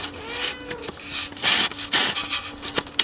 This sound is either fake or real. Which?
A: real